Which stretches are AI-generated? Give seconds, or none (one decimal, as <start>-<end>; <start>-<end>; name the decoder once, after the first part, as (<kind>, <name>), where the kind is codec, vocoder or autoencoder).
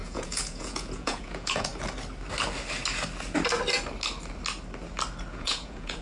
0.0-1.7 (vocoder, Vocos); 5.3-6.0